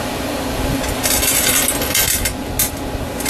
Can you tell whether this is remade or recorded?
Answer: recorded